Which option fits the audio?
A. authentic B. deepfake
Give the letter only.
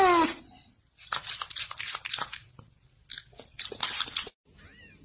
A